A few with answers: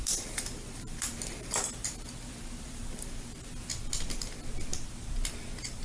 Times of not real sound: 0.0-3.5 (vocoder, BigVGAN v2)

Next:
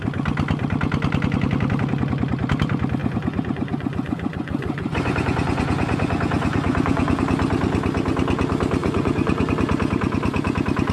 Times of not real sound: 3.0-7.2 (vocoder, Vocos); 8.8-9.5

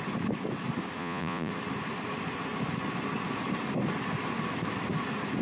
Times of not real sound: 1.0-1.5 (vocoder, Vocos)

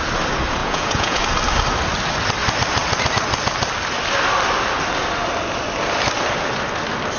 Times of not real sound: 0.6-1.2 (vocoder, Vocos)

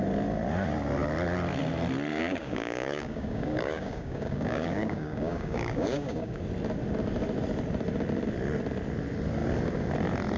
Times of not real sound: 2.1-6.4 (codec, DAC)